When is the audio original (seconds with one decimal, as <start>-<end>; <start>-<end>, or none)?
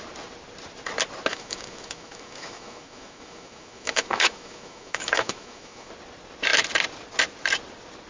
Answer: 0.0-1.3; 5.9-8.1